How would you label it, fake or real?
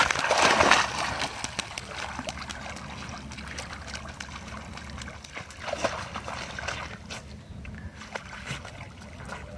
real